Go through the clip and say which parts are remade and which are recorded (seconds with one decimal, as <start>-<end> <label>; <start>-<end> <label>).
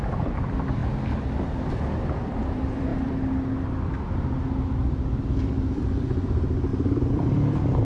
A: 0.0-0.8 remade; 0.8-1.6 recorded; 1.6-2.9 remade; 2.9-5.2 recorded; 5.2-6.7 remade; 6.7-7.8 recorded